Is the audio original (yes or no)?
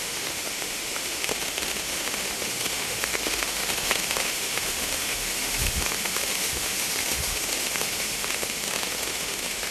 no